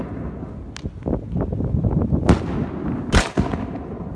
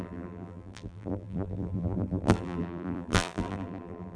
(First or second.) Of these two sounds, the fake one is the second